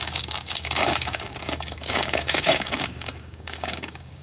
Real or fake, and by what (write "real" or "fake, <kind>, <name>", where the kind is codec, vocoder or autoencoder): fake, codec, DAC